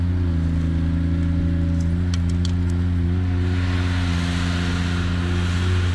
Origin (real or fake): real